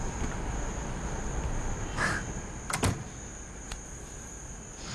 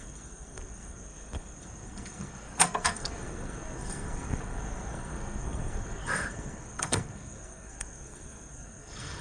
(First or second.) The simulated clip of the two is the second